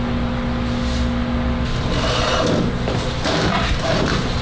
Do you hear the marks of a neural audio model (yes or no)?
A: no